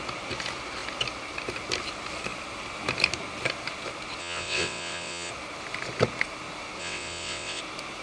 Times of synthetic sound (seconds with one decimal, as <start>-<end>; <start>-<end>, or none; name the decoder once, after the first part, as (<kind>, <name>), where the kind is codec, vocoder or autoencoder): 4.2-5.3 (vocoder, WaveNeXt); 6.8-7.6